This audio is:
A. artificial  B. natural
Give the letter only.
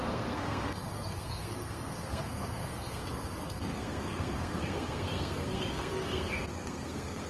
A